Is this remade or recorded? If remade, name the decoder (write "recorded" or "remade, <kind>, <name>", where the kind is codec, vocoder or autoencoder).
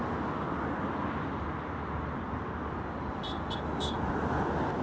recorded